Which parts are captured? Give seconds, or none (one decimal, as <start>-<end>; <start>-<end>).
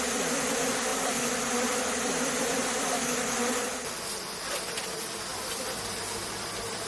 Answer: 0.0-0.9; 4.0-5.3; 6.0-6.9